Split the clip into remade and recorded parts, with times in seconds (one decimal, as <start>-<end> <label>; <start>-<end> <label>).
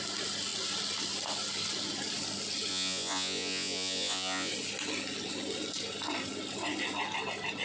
0.0-2.7 recorded; 2.7-4.5 remade; 4.5-7.6 recorded